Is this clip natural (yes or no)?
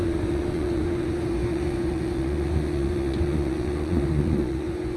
no